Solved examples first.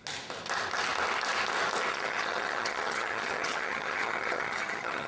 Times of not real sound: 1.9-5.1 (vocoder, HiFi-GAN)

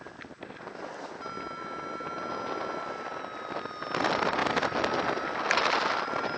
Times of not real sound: none

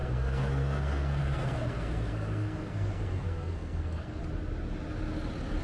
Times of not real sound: 0.0-4.2 (codec, SNAC)

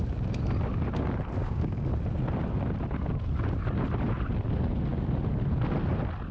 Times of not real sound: 1.4-1.9 (codec, DAC)

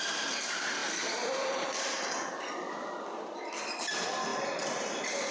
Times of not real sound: 0.8-1.7 (vocoder, BigVGAN v2)